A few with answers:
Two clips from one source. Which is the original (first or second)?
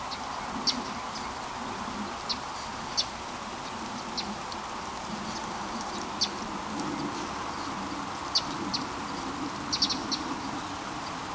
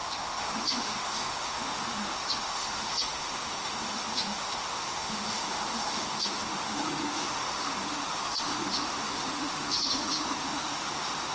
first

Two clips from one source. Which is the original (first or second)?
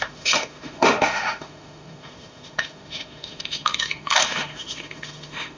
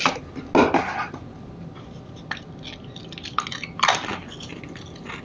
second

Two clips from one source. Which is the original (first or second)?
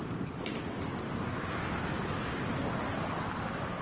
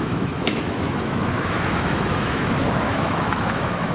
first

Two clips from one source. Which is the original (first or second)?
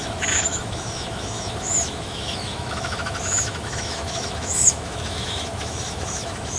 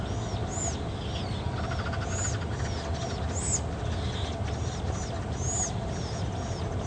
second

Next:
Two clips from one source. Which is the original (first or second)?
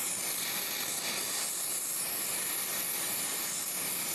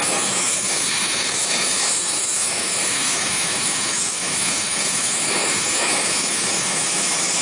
first